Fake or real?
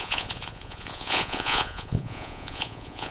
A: fake